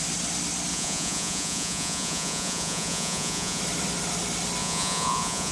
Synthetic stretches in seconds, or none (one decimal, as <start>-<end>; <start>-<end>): 0.7-3.6; 4.6-5.5

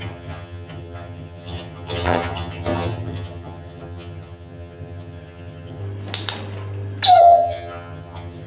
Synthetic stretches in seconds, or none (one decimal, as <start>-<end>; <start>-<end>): 0.0-5.8; 7.2-8.5

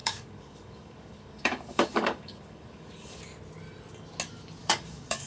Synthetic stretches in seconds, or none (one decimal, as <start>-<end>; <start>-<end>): 0.0-3.2; 4.6-5.3

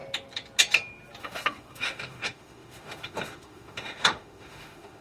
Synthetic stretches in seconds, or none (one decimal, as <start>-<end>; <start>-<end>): 1.2-5.0

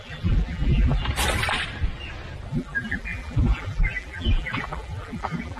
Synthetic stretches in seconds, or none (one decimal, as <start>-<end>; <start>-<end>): 0.0-1.0; 2.5-5.6

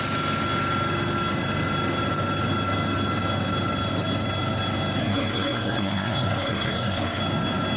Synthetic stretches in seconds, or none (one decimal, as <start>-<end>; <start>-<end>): 5.0-7.2

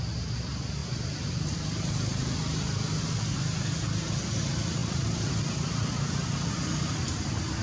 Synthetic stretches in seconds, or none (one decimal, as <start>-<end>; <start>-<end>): 4.8-5.3

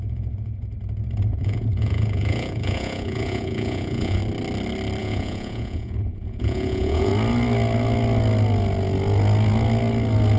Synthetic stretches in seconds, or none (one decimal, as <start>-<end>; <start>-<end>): 0.0-0.7; 1.3-4.2; 5.0-7.1